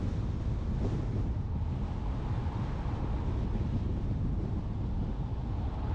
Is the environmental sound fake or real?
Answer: real